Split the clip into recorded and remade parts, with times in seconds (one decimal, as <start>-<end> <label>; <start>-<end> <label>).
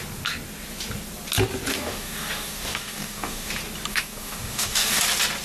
0.0-1.7 recorded; 1.7-3.5 remade; 3.5-3.9 recorded; 3.9-5.0 remade; 5.0-5.4 recorded